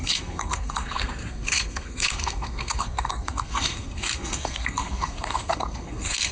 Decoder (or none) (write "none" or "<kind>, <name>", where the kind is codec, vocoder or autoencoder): codec, SNAC